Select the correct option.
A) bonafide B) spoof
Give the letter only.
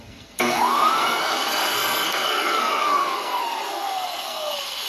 B